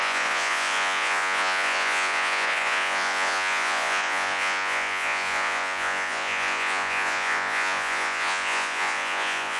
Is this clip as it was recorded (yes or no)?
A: no